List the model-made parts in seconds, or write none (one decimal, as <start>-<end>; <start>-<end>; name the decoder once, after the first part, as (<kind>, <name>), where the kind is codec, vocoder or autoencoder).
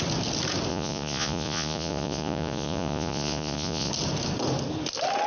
0.7-3.9 (vocoder, Vocos)